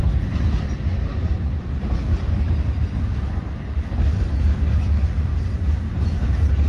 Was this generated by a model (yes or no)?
no